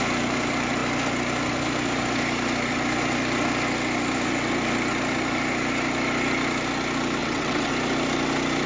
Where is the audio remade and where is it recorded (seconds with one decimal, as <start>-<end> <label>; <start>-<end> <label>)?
0.0-7.2 recorded; 7.2-7.7 remade; 7.7-8.7 recorded